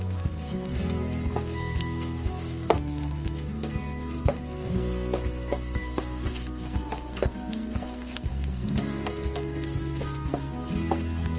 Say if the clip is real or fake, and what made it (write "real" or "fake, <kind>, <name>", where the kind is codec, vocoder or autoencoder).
fake, codec, SNAC